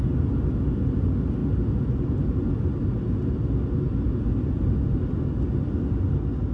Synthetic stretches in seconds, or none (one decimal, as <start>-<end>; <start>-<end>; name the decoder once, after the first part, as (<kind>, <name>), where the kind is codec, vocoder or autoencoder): none